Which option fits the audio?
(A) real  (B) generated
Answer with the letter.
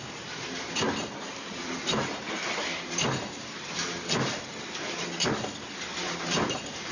B